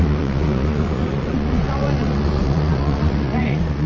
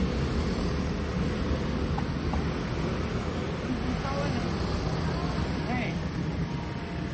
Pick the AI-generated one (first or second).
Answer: first